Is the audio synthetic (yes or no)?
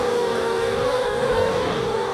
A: yes